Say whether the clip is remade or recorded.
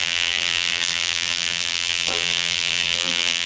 remade